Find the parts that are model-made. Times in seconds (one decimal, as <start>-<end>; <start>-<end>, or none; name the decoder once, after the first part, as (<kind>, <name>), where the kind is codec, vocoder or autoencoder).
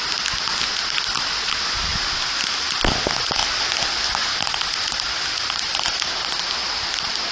none